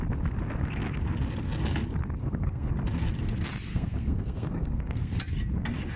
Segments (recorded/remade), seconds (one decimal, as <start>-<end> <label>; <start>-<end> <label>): 0.0-2.2 recorded; 2.2-2.7 remade; 2.7-3.7 recorded; 3.7-5.2 remade; 5.2-6.0 recorded